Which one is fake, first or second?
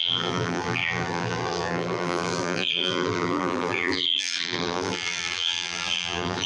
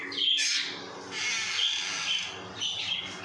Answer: first